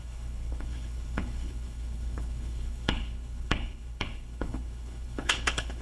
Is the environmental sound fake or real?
fake